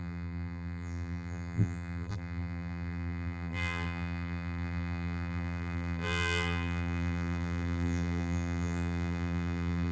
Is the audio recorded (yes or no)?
no